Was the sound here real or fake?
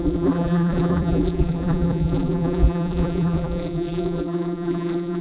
fake